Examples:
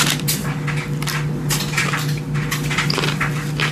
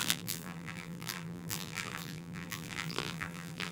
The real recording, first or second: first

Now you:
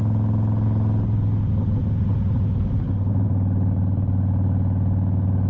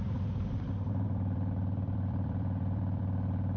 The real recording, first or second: first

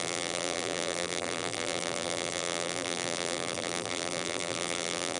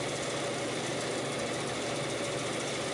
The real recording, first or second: second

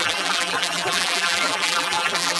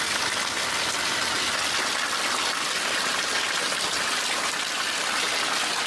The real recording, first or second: second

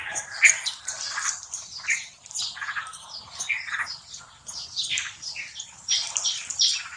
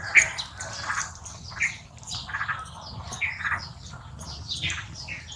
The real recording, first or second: second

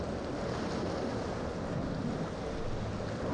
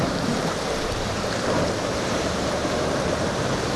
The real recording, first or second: first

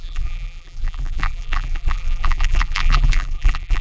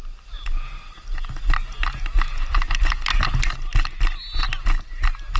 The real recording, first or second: second